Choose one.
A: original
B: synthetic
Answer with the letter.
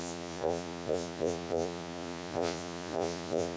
B